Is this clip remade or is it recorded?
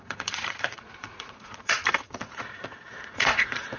remade